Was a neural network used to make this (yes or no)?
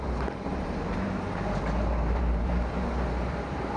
yes